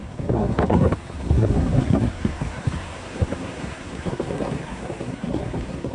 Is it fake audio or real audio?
fake